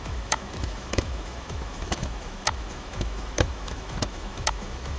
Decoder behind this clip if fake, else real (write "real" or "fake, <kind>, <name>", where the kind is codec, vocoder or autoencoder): fake, autoencoder, DAC-VAE